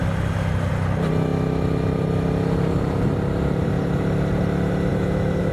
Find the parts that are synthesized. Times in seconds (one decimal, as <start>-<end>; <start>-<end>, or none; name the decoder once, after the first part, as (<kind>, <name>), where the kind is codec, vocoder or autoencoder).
4.9-5.5 (autoencoder, DAC-VAE)